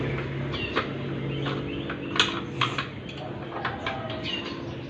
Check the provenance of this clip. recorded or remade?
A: recorded